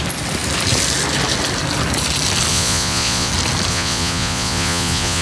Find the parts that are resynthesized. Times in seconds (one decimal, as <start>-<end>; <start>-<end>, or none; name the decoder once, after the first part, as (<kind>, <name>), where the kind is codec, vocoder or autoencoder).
2.5-3.3 (vocoder, Vocos); 3.7-5.2